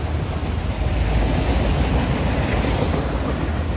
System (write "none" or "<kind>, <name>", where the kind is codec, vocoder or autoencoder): none